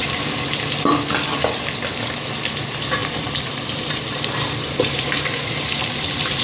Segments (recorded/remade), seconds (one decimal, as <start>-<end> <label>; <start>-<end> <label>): 0.0-3.0 recorded; 3.0-6.4 remade